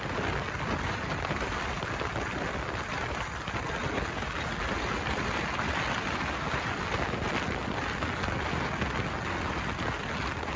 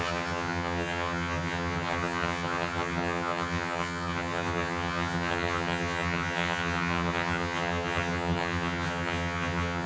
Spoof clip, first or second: second